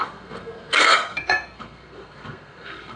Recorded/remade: remade